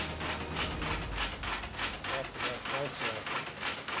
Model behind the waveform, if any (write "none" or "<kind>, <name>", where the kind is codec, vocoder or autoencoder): none